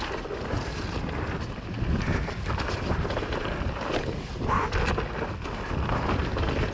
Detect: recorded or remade recorded